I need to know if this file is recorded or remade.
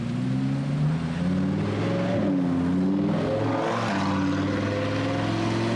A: recorded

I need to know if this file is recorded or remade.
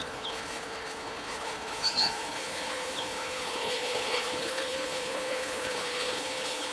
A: remade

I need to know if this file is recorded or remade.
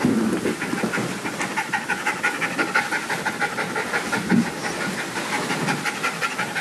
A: recorded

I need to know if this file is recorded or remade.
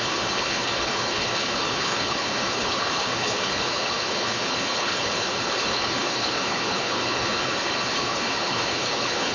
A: remade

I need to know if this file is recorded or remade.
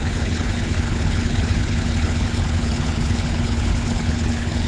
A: remade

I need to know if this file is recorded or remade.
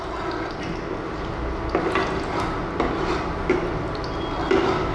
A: recorded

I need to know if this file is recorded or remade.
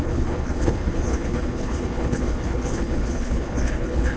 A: remade